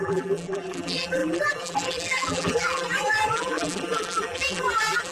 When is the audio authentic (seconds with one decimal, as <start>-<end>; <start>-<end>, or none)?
none